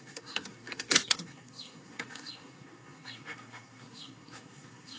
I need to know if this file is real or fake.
fake